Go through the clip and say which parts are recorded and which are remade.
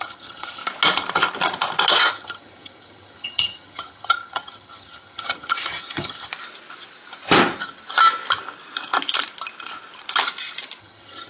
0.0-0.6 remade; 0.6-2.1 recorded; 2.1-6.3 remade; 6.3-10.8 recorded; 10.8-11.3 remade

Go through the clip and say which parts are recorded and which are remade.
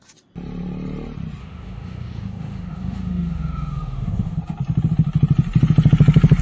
0.0-1.4 recorded; 1.4-4.4 remade; 4.4-6.4 recorded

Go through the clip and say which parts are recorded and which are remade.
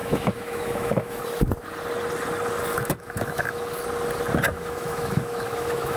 0.0-1.2 remade; 1.2-2.7 recorded; 2.7-3.8 remade; 3.8-4.5 recorded; 4.5-6.0 remade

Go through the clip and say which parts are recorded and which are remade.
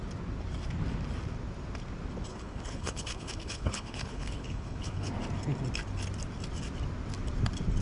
0.0-2.3 recorded; 2.3-5.1 remade; 5.1-7.8 recorded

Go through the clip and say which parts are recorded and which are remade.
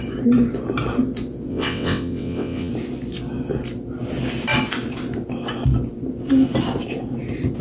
0.0-1.5 recorded; 1.5-2.7 remade; 2.7-7.6 recorded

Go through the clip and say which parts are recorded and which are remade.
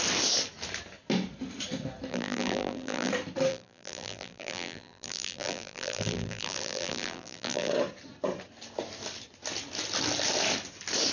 0.0-2.1 recorded; 2.1-3.1 remade; 3.1-3.5 recorded; 3.5-7.7 remade; 7.7-11.1 recorded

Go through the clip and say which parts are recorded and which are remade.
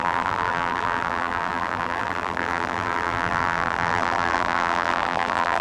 0.0-5.6 remade